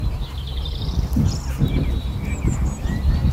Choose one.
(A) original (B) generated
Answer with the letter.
B